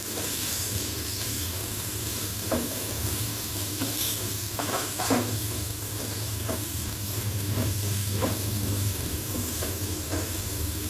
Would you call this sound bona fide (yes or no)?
no